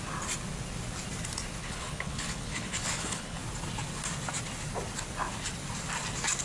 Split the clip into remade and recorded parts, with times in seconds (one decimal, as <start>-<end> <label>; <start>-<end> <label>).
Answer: 0.0-1.6 recorded; 1.6-3.4 remade; 3.4-6.4 recorded

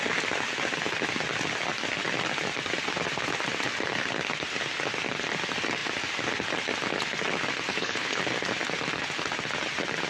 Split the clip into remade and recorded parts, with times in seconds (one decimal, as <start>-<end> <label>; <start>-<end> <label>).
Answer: 0.0-7.7 recorded; 7.7-8.2 remade; 8.2-10.1 recorded

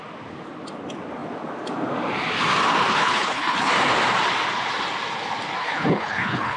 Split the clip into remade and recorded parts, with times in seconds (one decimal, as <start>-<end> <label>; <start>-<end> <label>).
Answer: 0.0-2.9 recorded; 2.9-3.7 remade; 3.7-5.6 recorded; 5.6-6.6 remade

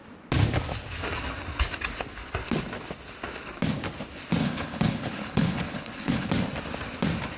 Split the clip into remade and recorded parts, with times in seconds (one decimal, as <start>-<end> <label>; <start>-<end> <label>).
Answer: 0.0-4.4 recorded; 4.4-6.3 remade; 6.3-7.4 recorded

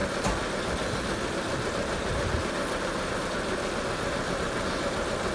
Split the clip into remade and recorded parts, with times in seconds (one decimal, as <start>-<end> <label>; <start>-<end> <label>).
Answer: 0.0-5.3 recorded

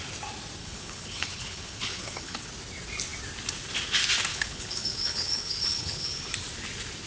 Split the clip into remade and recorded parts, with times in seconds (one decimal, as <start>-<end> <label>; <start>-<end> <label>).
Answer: 0.0-0.6 recorded; 0.6-2.5 remade; 2.5-4.3 recorded; 4.3-6.3 remade; 6.3-7.1 recorded